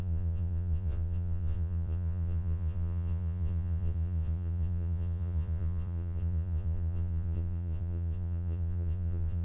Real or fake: fake